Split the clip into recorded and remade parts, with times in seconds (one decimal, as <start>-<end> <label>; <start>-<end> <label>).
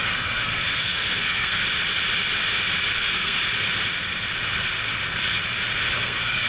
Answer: 0.0-1.6 remade; 1.6-3.0 recorded; 3.0-3.4 remade; 3.4-5.9 recorded; 5.9-6.5 remade